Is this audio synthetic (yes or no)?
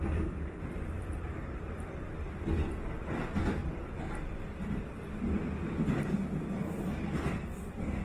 no